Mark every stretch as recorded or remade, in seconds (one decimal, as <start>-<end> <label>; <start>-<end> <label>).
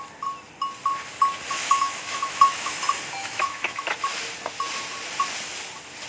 0.0-1.6 recorded; 1.6-2.8 remade; 2.8-3.2 recorded; 3.2-4.0 remade; 4.0-6.1 recorded